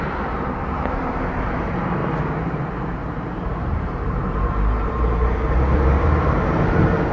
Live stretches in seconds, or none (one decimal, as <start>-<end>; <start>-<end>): none